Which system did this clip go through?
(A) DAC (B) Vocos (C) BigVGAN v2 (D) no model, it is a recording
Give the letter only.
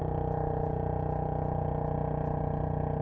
D